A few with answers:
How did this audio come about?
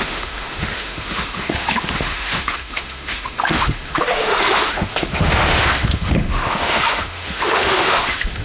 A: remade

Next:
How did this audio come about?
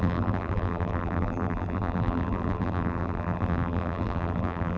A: remade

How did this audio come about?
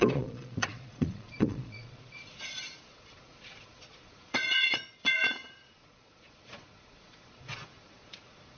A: remade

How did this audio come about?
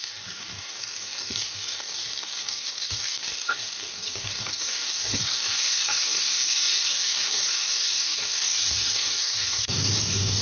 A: remade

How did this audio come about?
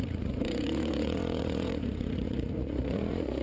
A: remade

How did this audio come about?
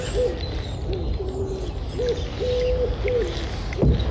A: recorded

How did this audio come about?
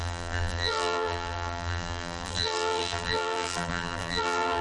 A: remade